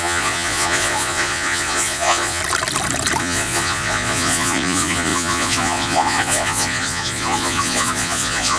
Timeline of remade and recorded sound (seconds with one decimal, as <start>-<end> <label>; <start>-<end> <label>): 0.0-2.4 remade; 2.4-3.2 recorded; 3.2-8.6 remade

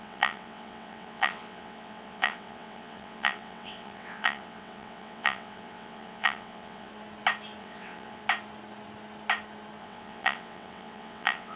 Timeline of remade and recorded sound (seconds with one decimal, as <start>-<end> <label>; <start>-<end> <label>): 0.0-6.9 remade; 6.9-7.6 recorded; 7.6-8.2 remade; 8.2-9.8 recorded; 9.8-11.6 remade

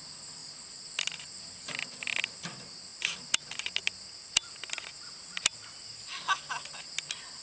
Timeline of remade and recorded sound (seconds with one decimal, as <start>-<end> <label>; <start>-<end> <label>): 0.0-7.4 recorded

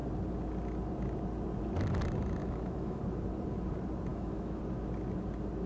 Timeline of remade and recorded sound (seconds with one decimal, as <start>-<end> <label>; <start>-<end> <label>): 0.0-2.4 recorded; 2.4-3.0 remade; 3.0-4.1 recorded; 4.1-4.6 remade; 4.6-5.7 recorded

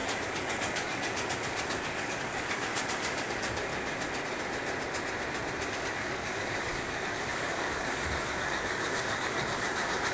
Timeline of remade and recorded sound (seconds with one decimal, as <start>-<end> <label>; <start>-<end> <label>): 0.0-3.7 remade; 3.7-5.7 recorded; 5.7-10.1 remade

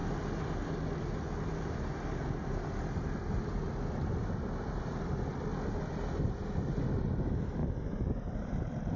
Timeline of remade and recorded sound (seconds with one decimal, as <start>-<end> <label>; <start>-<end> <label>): 0.0-4.1 recorded; 4.1-5.5 remade; 5.5-6.6 recorded; 6.6-7.6 remade; 7.6-8.3 recorded; 8.3-9.0 remade

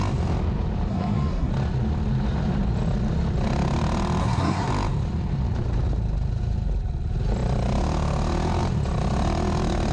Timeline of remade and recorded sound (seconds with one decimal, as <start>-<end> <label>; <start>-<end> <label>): 0.0-0.9 recorded; 0.9-1.5 remade; 1.5-4.2 recorded; 4.2-4.7 remade; 4.7-9.9 recorded